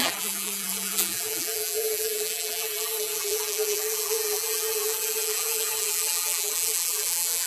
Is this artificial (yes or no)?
yes